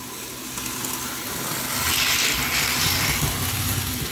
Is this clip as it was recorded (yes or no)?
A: yes